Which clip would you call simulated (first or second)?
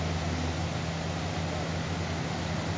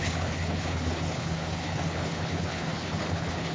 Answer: second